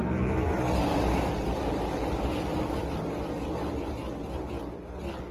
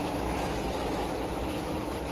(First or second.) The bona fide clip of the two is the first